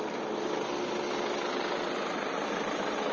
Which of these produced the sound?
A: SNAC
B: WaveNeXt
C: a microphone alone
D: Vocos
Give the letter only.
C